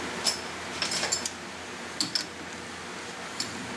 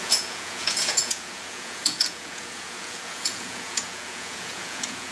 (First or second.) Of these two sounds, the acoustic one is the first